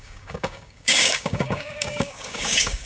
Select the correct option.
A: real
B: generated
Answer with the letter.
B